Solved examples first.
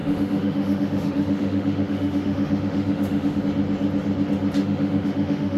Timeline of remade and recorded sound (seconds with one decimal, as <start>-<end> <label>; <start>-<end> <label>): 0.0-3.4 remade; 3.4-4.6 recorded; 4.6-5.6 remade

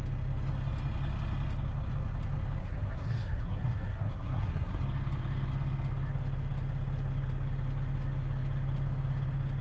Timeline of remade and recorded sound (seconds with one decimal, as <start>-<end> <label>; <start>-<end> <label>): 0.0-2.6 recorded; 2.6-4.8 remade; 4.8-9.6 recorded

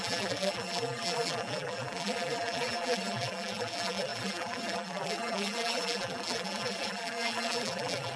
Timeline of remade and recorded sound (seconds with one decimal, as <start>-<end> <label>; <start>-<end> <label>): 0.0-8.2 remade

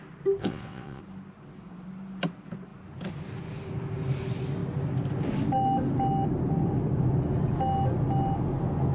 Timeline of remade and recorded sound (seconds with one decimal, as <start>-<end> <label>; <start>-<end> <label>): 0.0-0.4 recorded; 0.4-1.0 remade; 1.0-8.9 recorded